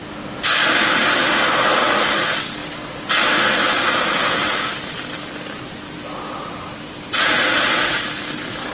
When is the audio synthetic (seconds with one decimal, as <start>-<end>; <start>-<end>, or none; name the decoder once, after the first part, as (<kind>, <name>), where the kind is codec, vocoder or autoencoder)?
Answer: none